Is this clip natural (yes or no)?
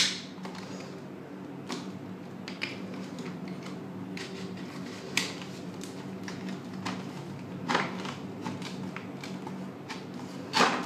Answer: yes